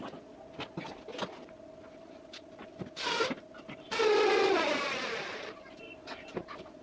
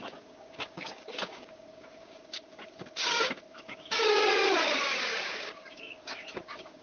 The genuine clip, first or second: first